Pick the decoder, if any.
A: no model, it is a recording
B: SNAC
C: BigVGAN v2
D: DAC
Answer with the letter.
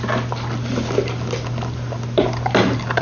A